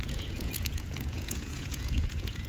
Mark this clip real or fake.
fake